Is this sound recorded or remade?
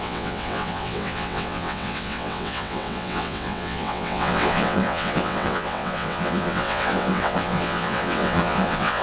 remade